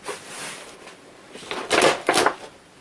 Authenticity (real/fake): real